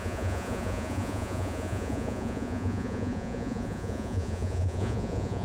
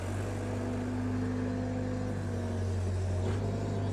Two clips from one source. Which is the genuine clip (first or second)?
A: second